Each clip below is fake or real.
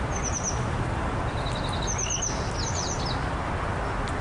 real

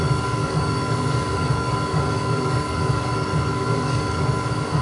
fake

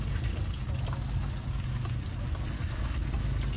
real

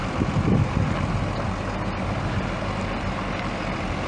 real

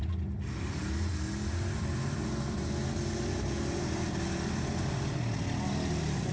real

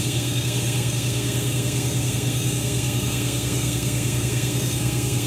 fake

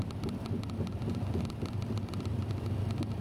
fake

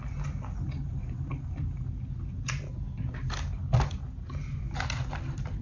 real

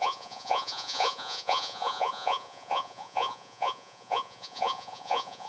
fake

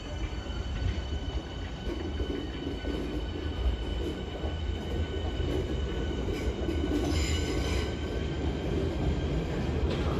real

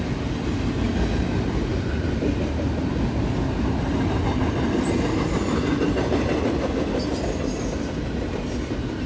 real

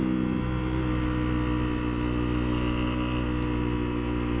real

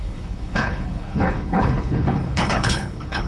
fake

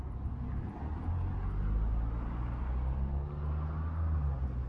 real